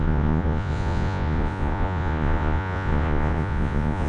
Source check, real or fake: fake